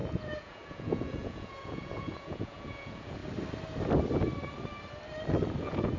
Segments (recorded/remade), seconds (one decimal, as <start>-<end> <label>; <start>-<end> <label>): 0.0-3.2 remade; 3.2-5.6 recorded; 5.6-6.0 remade